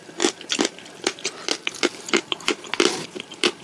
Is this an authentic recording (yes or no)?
yes